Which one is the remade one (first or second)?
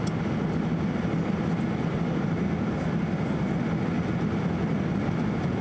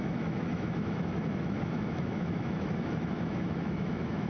second